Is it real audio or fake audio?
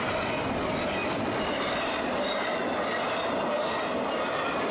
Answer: real